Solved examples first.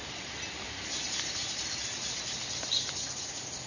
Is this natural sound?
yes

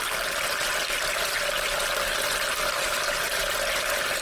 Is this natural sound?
yes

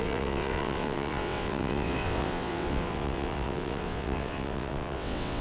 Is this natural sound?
no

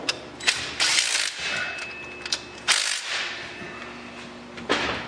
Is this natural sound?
yes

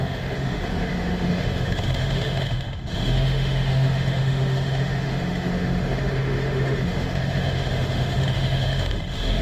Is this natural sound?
no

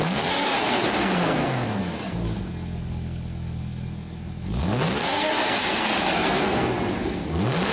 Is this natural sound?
no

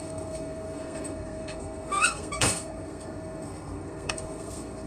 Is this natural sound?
no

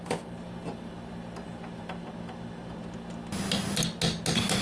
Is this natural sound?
yes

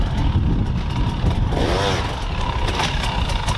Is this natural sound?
yes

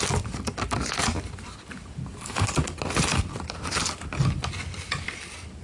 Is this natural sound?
yes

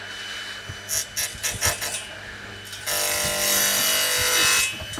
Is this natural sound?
yes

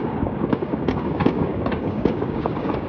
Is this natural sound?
no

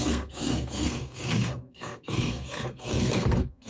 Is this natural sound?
no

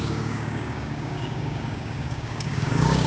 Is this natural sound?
no